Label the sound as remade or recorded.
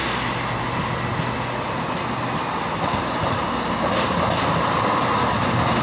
recorded